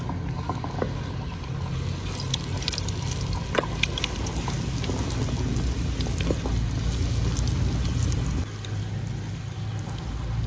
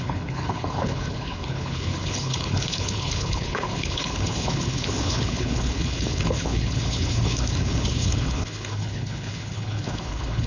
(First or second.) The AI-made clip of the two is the second